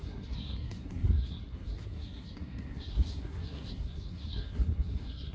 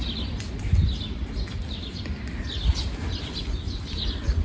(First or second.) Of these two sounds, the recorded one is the second